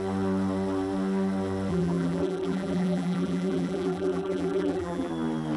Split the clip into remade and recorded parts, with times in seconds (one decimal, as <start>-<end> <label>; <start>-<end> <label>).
0.0-1.7 recorded; 1.7-5.1 remade; 5.1-5.6 recorded